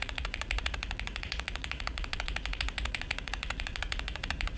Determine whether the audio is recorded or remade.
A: remade